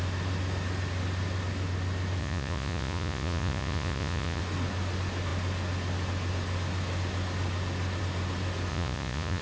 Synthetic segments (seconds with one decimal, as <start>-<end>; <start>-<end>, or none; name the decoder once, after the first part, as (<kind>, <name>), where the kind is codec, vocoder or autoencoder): 2.2-4.4 (vocoder, Vocos); 8.7-9.4